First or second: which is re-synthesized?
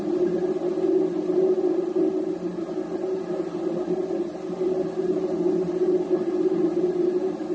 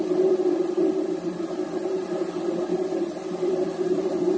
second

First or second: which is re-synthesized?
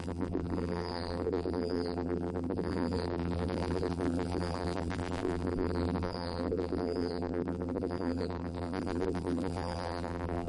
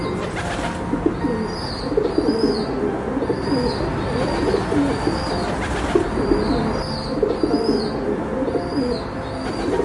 first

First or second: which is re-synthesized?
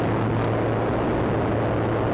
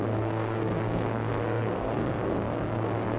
second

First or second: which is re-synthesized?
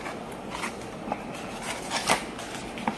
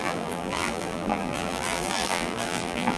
second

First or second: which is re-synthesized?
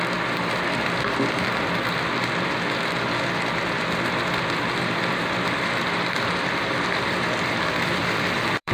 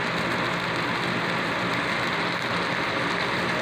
first